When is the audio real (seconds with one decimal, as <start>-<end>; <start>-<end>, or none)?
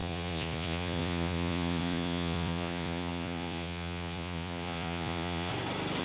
5.5-6.0